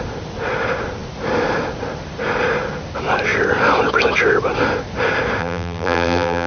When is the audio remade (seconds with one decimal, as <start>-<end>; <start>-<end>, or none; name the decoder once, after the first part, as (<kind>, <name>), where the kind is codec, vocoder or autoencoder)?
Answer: 5.4-6.5 (vocoder, BigVGAN v2)